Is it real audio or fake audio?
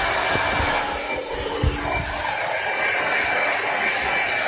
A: real